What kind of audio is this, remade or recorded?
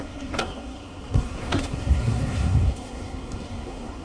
remade